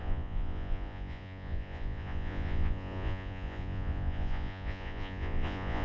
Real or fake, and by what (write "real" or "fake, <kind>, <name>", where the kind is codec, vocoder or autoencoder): fake, vocoder, Vocos